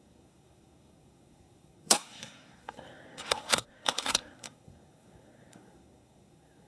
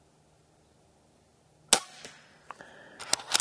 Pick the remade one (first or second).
first